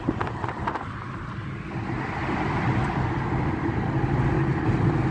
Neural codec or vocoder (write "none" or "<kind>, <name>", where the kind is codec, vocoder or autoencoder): none